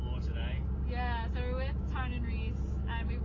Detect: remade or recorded recorded